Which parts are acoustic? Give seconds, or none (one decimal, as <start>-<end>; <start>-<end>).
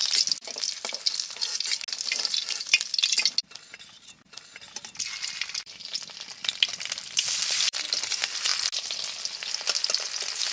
0.0-10.5